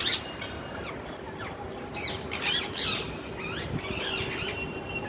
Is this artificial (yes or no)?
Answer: no